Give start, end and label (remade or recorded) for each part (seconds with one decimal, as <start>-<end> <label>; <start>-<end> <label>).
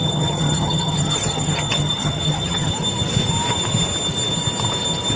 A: 0.0-2.7 remade; 2.7-5.2 recorded